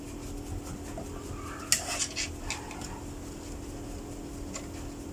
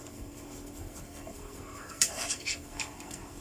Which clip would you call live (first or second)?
first